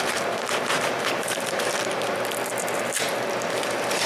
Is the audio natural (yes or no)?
no